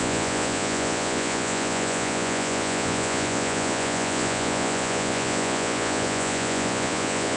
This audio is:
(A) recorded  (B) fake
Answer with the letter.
B